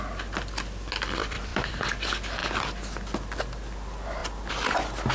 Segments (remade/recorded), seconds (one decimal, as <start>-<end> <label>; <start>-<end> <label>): 0.0-1.2 recorded; 1.2-1.8 remade; 1.8-5.1 recorded